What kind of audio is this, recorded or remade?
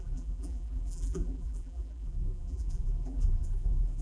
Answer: remade